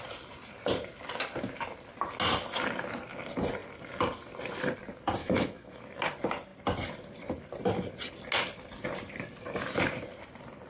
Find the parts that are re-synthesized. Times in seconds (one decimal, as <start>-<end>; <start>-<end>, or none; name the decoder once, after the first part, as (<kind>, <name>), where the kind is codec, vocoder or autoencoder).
5.2-5.8 (autoencoder, DAC-VAE)